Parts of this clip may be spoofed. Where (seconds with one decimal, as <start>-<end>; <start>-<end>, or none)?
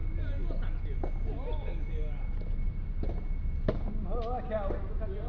none